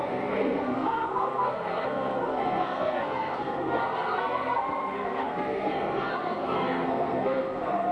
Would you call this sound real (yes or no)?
no